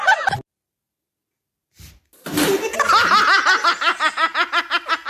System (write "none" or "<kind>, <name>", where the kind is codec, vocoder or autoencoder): none